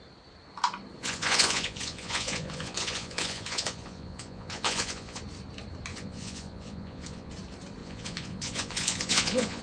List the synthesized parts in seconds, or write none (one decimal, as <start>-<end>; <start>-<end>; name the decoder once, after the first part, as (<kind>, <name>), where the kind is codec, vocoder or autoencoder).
1.0-5.2 (vocoder, Vocos); 5.9-7.3; 7.8-9.6